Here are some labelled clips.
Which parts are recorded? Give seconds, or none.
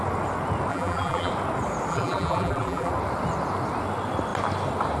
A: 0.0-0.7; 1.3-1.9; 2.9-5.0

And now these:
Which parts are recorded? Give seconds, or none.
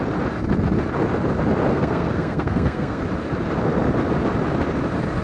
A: 0.0-1.7; 3.0-5.2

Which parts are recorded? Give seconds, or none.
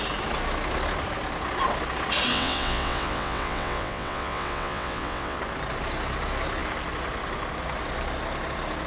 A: 0.0-2.3; 5.4-8.9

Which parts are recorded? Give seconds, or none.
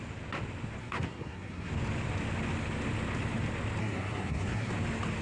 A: 0.0-0.8; 1.7-3.8; 4.7-5.2